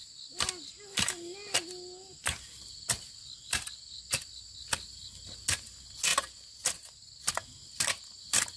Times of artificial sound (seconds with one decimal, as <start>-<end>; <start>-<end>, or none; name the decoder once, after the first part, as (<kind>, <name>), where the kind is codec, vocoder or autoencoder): 2.1-4.2 (vocoder, BigVGAN v2)